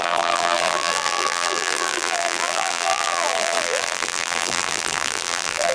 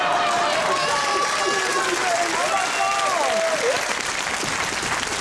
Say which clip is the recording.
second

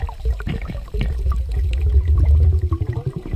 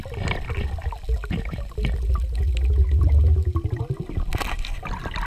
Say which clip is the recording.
second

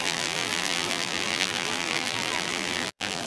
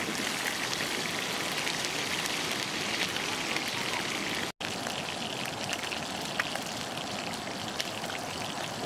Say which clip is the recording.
second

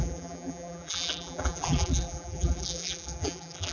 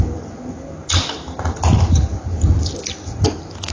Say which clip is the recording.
second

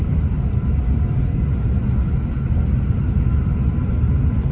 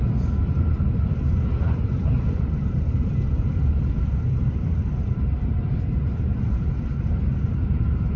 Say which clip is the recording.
first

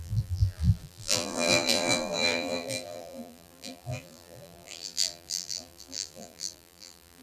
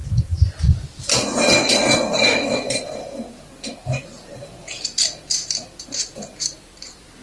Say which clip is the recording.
second